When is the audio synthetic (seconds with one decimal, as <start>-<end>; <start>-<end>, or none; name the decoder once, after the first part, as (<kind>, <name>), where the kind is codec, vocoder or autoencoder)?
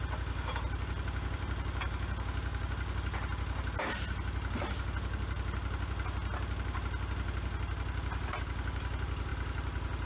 none